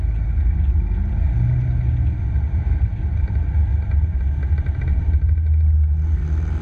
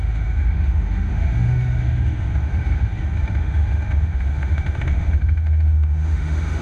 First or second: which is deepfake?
second